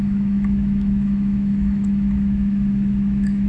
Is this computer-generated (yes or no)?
yes